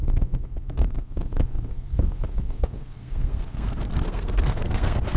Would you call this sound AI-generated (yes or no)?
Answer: yes